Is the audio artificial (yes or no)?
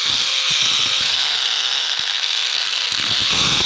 yes